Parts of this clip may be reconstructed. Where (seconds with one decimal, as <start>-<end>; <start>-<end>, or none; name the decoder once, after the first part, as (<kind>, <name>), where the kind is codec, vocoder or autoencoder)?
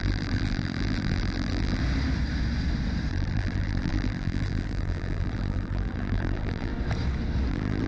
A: 0.0-1.8 (vocoder, BigVGAN v2); 3.1-6.7; 7.5-7.9